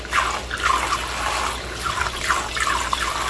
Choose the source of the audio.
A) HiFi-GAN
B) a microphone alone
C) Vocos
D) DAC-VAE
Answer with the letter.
B